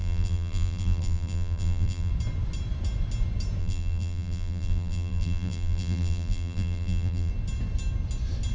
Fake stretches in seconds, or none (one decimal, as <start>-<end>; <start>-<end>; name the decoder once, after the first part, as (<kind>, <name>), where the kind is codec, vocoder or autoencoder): 0.0-2.1 (vocoder, BigVGAN v2); 3.6-7.3